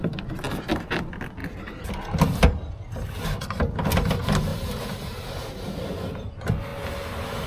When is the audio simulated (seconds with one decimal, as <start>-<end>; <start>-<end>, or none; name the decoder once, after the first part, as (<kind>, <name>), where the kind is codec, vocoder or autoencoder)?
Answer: 4.5-5.8 (vocoder, BigVGAN v2)